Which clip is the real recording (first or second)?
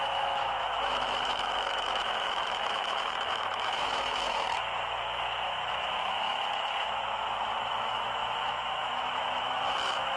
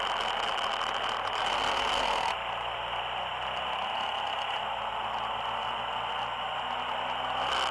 second